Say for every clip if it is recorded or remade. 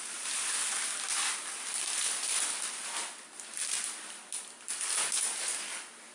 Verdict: recorded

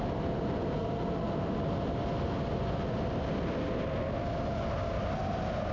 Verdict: recorded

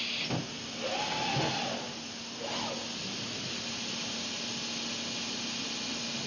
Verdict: recorded